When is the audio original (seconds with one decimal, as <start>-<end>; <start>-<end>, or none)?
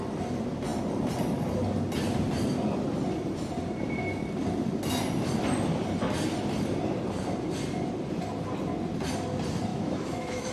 0.0-9.7